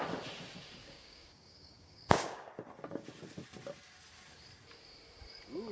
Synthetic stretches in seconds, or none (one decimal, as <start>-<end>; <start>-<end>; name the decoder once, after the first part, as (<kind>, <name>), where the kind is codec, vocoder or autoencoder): 0.8-2.5 (codec, DAC)